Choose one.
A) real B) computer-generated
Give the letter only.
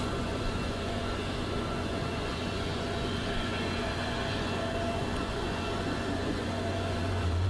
B